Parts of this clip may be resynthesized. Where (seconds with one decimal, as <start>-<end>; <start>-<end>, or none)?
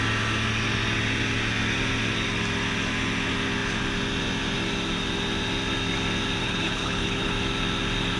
6.4-7.3